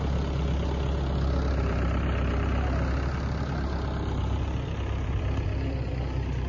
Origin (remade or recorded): recorded